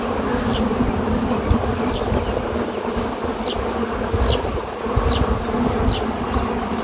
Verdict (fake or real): real